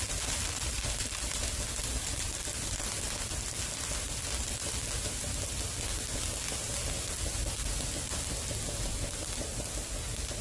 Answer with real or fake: real